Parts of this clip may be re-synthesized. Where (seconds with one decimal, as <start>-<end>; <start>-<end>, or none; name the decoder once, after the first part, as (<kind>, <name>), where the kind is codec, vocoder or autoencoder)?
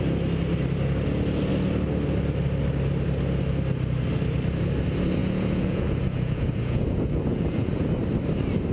5.2-7.9 (vocoder, Vocos)